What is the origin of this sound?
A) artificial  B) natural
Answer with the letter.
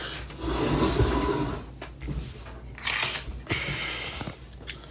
B